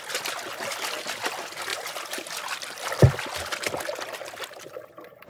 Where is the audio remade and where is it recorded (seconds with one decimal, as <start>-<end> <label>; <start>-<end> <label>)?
0.0-1.7 recorded; 1.7-3.0 remade; 3.0-5.3 recorded